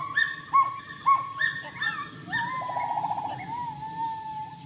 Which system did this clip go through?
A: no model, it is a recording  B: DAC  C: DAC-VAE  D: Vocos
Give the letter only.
A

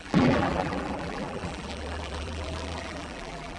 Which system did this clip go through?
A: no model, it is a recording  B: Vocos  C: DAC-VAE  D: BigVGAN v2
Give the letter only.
D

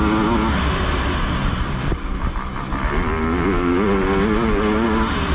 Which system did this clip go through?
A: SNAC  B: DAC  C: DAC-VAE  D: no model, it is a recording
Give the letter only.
D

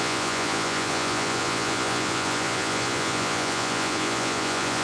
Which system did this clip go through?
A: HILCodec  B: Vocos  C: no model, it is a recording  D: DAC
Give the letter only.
B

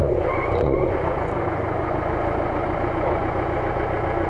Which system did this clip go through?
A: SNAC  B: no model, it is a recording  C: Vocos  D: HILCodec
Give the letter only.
C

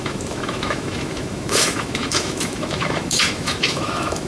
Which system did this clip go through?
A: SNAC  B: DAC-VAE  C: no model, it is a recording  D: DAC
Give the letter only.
B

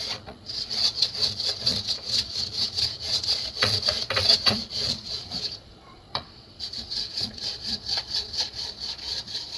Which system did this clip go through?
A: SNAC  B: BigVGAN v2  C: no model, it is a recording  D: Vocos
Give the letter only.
D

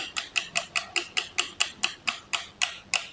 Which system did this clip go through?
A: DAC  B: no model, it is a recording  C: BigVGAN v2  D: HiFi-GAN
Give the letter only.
B